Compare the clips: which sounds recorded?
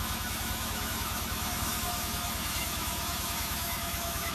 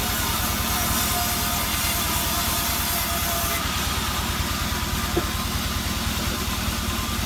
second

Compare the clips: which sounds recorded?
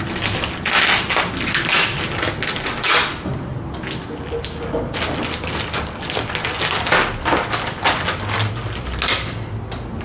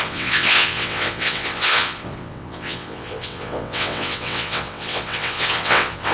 first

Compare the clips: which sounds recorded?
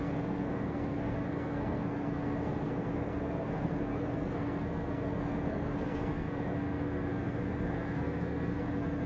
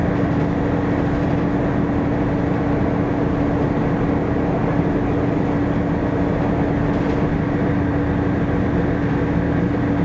second